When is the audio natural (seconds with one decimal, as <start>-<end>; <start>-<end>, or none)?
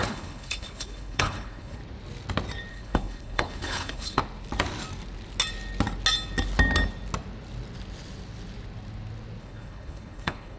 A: 1.8-2.7; 4.2-9.4